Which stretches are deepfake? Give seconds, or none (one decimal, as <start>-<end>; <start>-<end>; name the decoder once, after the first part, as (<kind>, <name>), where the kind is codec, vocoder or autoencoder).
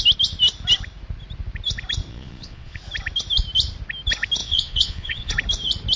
2.1-2.8 (vocoder, Vocos); 4.4-5.3